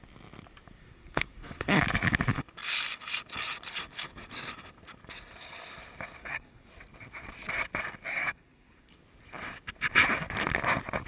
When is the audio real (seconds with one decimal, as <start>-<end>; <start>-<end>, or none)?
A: 0.0-0.8; 1.8-6.2; 6.7-8.1; 8.9-11.1